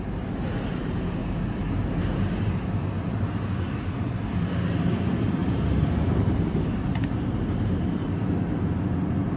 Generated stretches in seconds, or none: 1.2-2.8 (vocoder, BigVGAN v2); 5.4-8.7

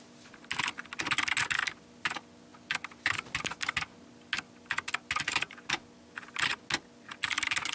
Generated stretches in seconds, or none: 2.5-3.3 (vocoder, BigVGAN v2)

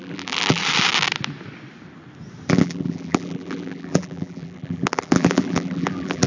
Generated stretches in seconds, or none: 0.0-0.6 (vocoder, BigVGAN v2); 2.5-6.3

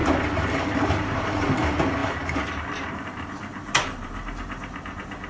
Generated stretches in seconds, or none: 0.8-5.3 (vocoder, BigVGAN v2)

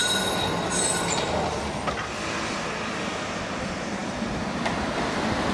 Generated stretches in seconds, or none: none